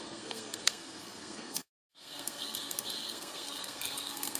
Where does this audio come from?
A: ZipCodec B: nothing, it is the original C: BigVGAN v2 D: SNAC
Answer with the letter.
D